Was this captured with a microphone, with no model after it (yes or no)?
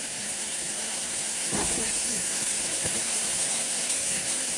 no